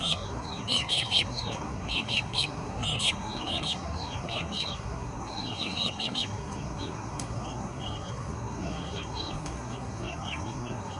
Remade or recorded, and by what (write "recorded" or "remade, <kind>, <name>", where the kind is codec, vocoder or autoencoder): remade, codec, SNAC